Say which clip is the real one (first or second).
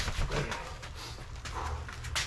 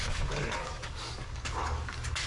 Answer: first